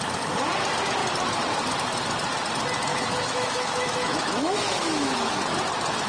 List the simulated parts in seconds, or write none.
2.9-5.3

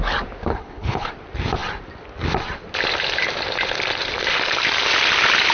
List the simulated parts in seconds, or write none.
0.5-1.1